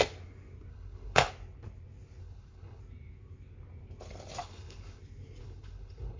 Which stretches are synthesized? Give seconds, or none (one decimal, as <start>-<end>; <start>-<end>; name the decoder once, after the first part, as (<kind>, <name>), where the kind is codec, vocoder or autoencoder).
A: 0.7-1.3 (codec, HILCodec); 2.2-2.8; 4.4-5.0; 5.4-6.2